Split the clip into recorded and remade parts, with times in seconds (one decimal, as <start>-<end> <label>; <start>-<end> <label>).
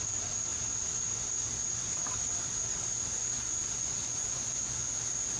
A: 0.0-3.2 recorded; 3.2-4.9 remade; 4.9-5.4 recorded